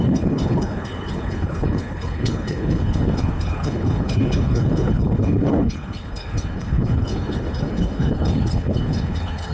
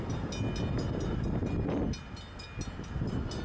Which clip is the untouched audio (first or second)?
second